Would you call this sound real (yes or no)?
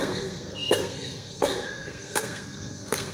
no